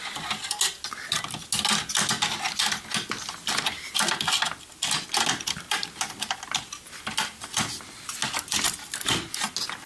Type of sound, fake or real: real